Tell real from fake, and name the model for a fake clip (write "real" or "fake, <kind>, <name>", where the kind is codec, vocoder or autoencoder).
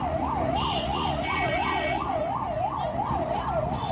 fake, vocoder, Vocos